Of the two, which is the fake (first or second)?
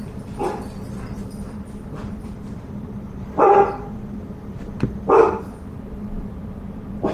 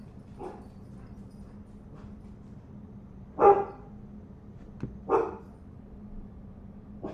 first